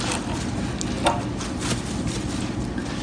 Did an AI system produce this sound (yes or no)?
no